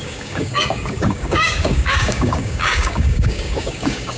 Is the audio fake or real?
fake